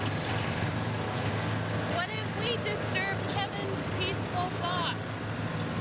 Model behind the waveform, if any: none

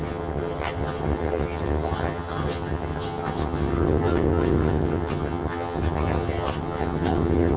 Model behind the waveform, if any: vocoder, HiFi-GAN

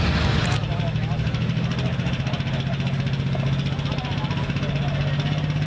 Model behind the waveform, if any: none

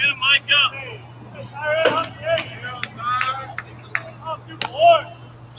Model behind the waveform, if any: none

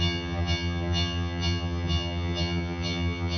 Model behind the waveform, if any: vocoder, HiFi-GAN